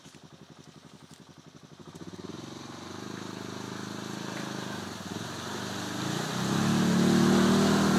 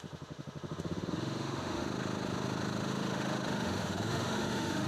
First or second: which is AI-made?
second